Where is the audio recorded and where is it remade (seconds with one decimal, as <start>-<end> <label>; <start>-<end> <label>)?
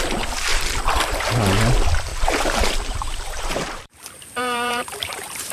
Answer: 0.0-0.5 recorded; 0.5-1.3 remade; 1.3-2.1 recorded; 2.1-5.5 remade